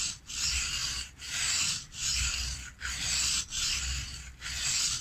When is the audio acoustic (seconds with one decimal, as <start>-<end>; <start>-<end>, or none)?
0.0-5.0